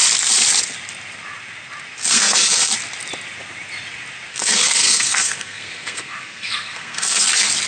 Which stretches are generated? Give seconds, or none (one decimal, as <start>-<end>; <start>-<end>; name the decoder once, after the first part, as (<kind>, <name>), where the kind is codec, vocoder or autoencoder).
2.0-2.7 (codec, SNAC); 4.3-7.3